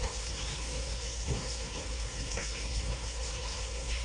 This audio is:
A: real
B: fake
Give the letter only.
B